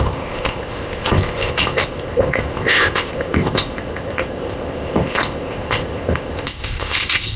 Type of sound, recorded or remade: remade